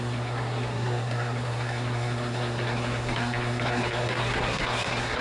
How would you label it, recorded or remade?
remade